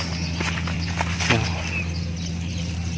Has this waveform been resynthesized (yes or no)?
no